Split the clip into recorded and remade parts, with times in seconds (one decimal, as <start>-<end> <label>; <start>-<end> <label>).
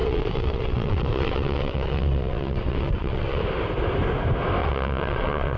0.0-3.4 remade; 3.4-4.6 recorded; 4.6-5.6 remade